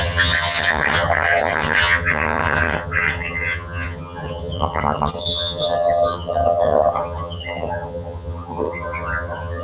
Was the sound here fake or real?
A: fake